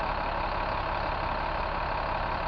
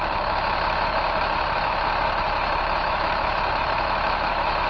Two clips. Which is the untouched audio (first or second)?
first